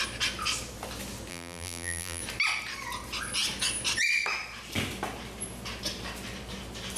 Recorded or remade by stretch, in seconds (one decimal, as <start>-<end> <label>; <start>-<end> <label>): 0.0-1.3 recorded; 1.3-2.2 remade; 2.2-7.0 recorded